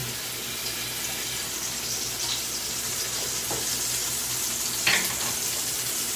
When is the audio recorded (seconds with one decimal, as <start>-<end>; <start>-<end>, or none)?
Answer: 0.0-6.2